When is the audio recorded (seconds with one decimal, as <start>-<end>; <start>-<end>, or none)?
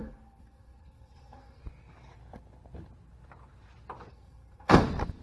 1.6-4.1; 4.8-5.2